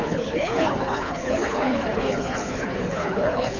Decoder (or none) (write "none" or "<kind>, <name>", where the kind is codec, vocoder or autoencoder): codec, HILCodec